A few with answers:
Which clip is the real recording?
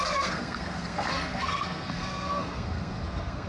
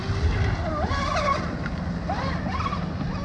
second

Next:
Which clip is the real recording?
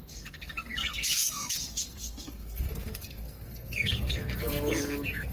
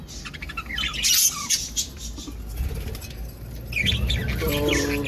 second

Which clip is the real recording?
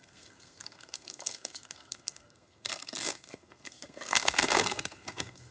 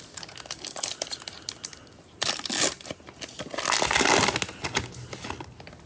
second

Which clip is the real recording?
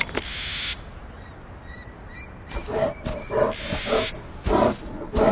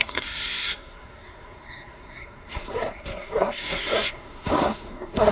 first